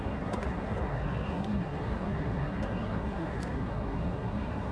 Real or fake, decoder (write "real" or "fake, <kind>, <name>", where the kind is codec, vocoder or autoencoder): fake, codec, SNAC